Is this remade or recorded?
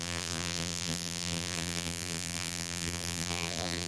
remade